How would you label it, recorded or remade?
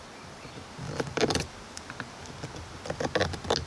recorded